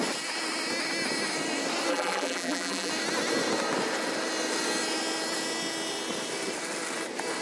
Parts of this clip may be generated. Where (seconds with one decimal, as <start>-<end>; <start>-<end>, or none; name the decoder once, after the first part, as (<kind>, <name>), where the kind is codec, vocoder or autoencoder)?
1.9-2.9 (vocoder, BigVGAN v2)